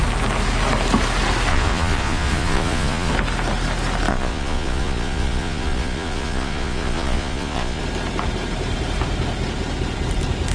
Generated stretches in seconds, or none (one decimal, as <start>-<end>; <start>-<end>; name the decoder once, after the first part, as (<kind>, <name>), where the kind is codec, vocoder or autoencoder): 1.5-3.1 (vocoder, Vocos); 4.1-7.8